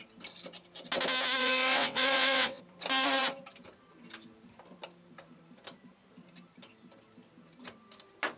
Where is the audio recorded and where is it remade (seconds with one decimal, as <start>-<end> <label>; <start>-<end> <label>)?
0.0-1.4 recorded; 1.4-2.6 remade; 2.6-8.4 recorded